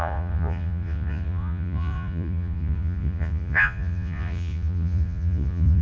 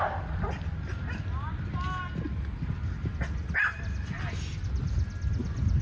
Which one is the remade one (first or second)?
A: first